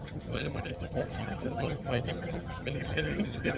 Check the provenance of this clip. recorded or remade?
remade